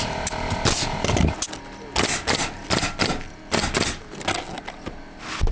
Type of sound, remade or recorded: recorded